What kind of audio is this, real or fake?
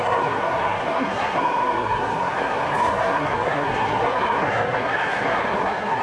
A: fake